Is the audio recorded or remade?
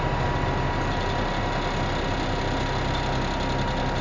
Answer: recorded